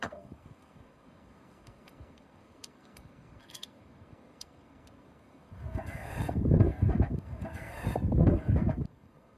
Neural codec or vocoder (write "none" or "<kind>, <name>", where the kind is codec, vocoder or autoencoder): codec, SNAC